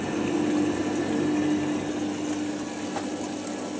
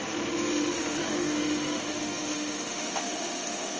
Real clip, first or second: first